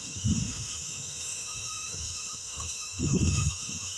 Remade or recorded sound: remade